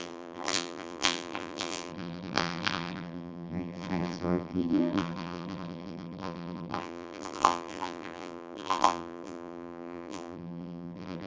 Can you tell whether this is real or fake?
fake